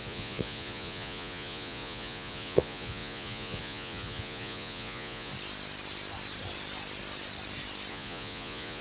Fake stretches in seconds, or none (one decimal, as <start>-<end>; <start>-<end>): 0.0-5.3; 7.9-8.8